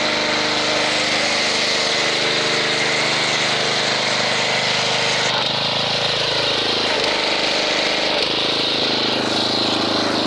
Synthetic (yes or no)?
no